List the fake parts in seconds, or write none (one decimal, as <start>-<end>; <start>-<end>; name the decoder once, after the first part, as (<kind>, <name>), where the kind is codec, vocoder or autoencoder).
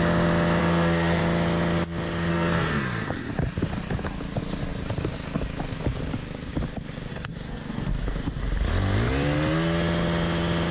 0.6-1.2 (codec, SNAC); 2.3-3.3; 7.1-8.4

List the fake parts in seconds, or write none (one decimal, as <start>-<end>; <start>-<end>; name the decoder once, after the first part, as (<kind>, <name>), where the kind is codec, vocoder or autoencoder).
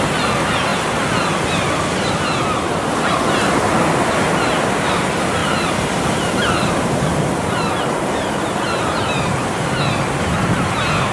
none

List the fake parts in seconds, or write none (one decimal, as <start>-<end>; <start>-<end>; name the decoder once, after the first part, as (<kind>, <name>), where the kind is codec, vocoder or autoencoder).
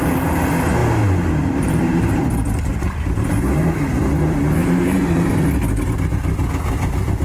0.8-2.2 (vocoder, BigVGAN v2); 2.7-3.8; 4.6-5.3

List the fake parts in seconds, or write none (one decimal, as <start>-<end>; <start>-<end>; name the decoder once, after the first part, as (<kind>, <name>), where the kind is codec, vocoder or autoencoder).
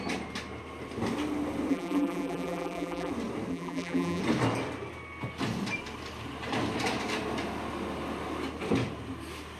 1.7-3.1 (vocoder, BigVGAN v2); 3.5-4.2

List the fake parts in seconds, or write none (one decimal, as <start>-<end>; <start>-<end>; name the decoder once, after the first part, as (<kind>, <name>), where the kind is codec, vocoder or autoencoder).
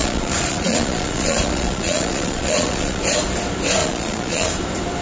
0.0-3.0 (vocoder, Vocos); 3.8-4.5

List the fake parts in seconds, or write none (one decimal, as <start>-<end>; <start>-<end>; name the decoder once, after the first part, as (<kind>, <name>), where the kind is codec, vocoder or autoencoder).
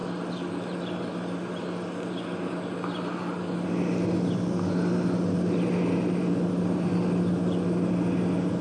none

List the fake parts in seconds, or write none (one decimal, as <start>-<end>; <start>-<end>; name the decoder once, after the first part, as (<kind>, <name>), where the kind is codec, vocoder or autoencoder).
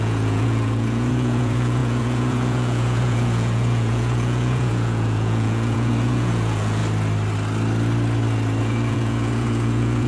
0.0-6.8 (vocoder, Vocos); 8.6-10.1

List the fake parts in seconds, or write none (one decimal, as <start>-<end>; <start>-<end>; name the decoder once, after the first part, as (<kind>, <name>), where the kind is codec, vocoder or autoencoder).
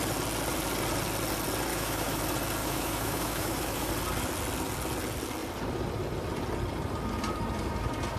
1.7-2.2 (autoencoder, DAC-VAE); 2.6-3.9